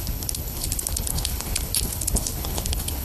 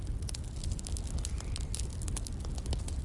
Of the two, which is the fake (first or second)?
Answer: first